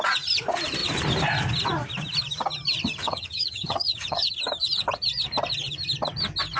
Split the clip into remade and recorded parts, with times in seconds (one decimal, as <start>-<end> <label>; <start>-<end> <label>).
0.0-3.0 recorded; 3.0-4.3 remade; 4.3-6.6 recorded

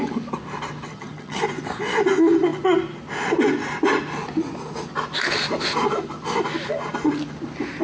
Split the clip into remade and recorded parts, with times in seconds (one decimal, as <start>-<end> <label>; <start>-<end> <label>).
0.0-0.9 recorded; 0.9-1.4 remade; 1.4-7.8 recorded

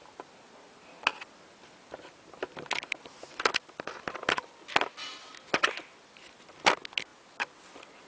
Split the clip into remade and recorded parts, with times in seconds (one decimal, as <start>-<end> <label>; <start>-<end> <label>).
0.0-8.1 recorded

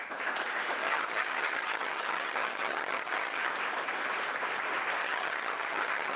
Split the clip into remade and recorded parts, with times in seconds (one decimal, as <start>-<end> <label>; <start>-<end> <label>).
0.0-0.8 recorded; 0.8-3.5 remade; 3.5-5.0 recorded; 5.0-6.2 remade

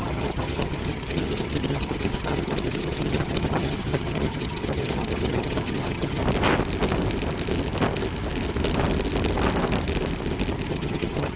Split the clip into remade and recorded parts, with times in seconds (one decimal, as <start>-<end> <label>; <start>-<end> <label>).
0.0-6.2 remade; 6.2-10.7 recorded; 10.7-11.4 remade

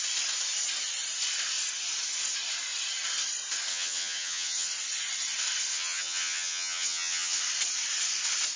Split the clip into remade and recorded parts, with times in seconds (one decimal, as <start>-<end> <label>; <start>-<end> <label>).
0.0-3.7 recorded; 3.7-4.7 remade; 4.7-5.7 recorded; 5.7-7.4 remade; 7.4-8.6 recorded